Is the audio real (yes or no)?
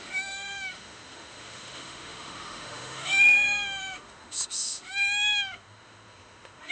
no